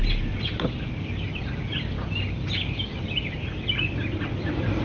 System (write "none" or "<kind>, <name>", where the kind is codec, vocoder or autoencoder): none